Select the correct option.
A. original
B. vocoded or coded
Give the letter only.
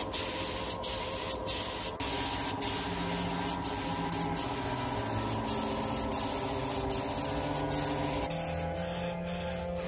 A